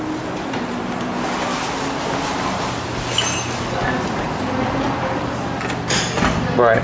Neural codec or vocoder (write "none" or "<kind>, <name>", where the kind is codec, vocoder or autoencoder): none